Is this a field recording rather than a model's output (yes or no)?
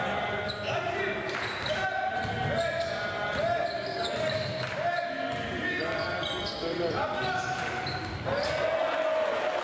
yes